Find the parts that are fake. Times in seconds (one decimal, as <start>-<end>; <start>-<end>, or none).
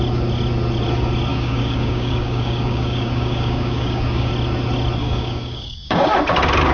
1.3-4.3; 5.0-6.1